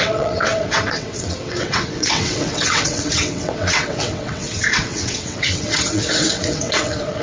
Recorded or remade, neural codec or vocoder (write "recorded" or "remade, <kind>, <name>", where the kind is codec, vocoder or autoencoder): remade, vocoder, WaveNeXt